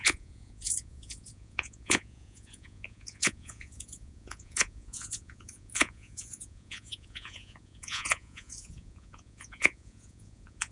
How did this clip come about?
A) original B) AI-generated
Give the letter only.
B